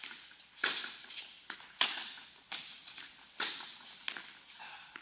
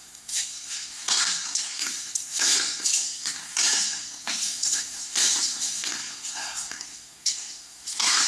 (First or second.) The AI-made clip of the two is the second